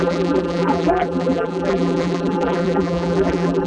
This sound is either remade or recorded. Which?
remade